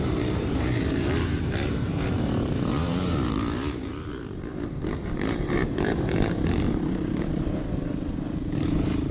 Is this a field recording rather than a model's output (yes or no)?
no